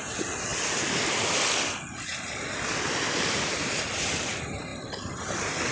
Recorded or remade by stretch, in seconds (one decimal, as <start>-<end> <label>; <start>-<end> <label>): 0.0-0.5 recorded; 0.5-1.1 remade; 1.1-2.1 recorded; 2.1-3.9 remade; 3.9-4.7 recorded; 4.7-5.2 remade; 5.2-5.7 recorded